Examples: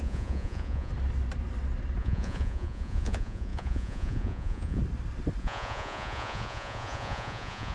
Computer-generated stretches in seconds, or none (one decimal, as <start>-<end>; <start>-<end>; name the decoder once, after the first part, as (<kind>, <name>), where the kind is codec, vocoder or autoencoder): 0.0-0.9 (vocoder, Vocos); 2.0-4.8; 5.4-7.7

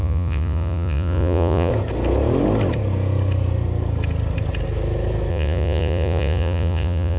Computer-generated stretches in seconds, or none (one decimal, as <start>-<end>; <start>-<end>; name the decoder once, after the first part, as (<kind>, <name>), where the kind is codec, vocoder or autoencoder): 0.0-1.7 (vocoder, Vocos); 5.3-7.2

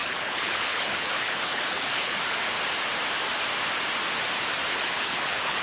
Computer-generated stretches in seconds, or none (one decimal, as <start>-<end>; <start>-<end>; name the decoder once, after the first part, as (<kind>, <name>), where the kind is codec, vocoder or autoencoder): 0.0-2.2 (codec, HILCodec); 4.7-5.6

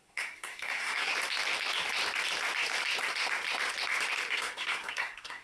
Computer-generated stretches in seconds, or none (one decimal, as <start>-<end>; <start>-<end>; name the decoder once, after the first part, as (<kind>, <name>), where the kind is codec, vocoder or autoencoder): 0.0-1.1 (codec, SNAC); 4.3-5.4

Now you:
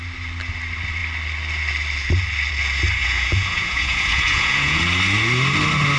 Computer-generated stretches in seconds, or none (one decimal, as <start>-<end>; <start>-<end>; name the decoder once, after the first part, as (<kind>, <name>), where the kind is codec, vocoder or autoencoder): 3.0-4.8 (vocoder, Vocos)

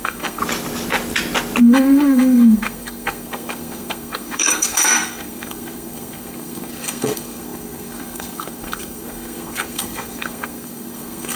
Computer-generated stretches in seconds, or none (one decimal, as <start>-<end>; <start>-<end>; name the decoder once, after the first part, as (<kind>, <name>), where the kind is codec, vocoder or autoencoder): 0.0-0.4 (codec, SNAC); 1.6-11.4